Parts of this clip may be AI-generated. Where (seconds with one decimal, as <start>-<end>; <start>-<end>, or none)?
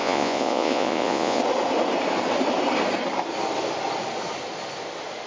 0.0-1.4